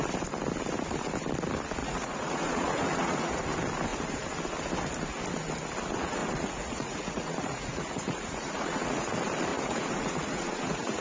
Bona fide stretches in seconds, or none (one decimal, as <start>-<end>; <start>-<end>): 0.0-1.8; 3.4-6.2; 9.1-9.5